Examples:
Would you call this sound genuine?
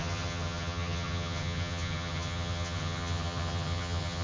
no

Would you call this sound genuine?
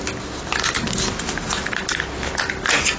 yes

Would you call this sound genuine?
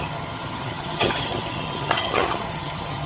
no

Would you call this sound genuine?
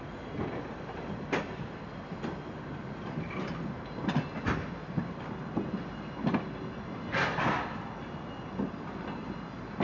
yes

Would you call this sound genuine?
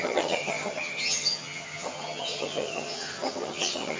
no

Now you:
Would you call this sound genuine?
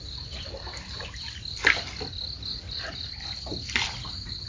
yes